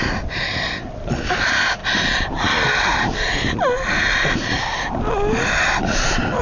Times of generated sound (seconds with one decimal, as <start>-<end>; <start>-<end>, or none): none